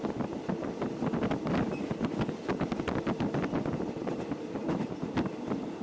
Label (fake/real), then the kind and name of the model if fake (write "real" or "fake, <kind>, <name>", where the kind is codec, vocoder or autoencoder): real